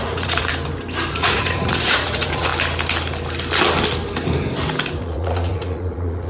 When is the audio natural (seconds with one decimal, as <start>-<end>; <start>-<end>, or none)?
0.5-1.1; 2.5-5.0